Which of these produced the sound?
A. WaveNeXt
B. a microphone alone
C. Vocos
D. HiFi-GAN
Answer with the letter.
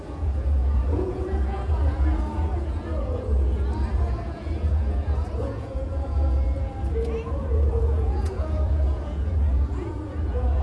C